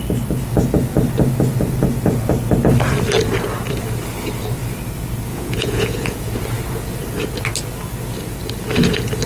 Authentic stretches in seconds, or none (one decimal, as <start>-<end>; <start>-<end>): 0.0-5.3; 6.3-9.3